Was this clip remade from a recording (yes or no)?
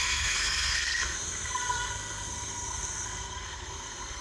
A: yes